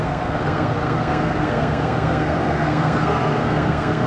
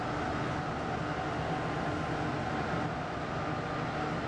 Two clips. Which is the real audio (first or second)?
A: second